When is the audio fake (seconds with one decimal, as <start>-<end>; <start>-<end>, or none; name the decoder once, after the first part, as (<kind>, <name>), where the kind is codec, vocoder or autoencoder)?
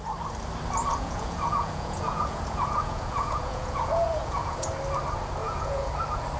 0.9-4.7 (vocoder, Vocos); 5.4-5.9